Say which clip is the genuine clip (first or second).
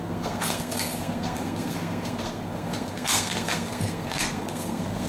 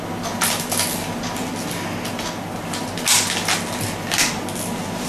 second